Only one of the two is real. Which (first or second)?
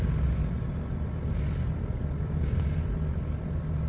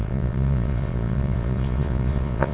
first